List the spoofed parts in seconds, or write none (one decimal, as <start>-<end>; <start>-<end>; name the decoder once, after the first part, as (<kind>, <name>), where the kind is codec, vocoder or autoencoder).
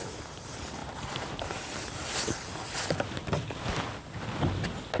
none